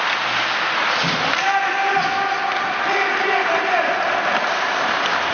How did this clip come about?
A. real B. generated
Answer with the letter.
A